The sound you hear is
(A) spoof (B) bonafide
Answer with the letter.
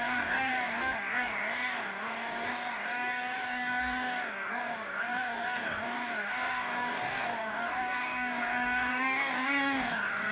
A